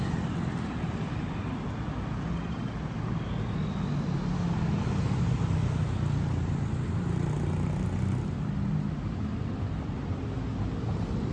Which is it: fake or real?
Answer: real